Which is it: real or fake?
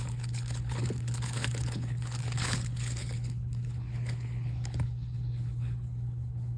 fake